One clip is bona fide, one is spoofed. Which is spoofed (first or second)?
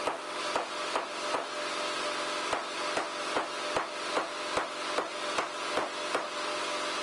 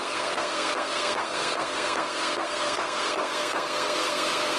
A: second